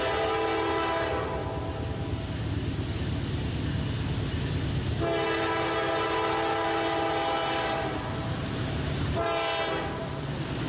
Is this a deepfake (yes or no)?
no